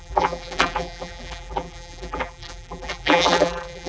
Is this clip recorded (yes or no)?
no